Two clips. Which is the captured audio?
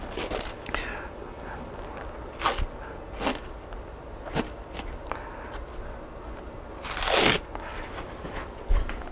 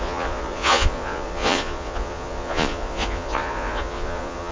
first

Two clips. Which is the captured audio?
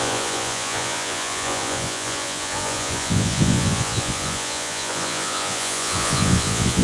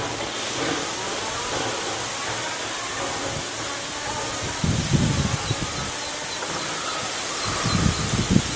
second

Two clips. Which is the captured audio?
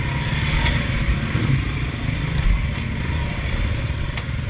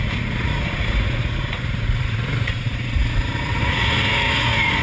first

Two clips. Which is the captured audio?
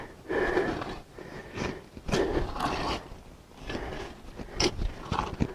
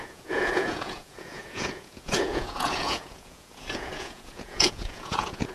first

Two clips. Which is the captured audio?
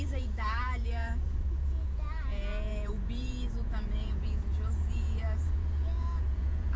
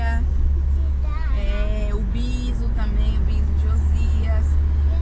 second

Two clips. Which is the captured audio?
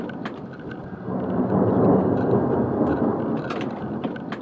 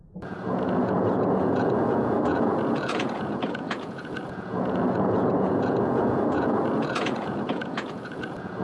first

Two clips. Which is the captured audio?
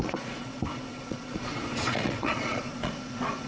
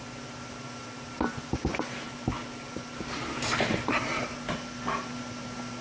second